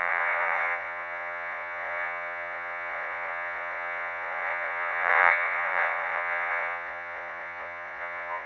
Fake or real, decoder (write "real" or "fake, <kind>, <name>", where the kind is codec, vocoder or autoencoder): fake, vocoder, Vocos